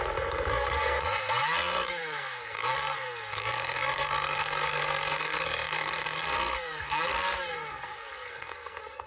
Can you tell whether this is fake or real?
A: fake